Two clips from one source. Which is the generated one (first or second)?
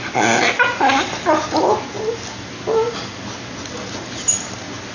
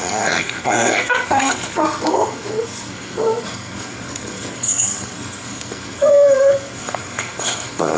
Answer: second